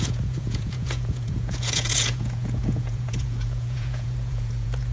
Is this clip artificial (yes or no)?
yes